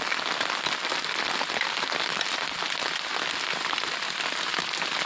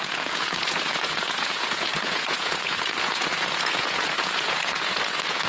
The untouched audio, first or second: first